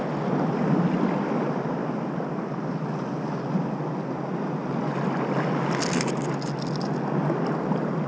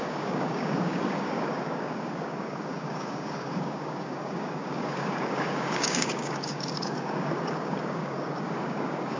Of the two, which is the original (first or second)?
first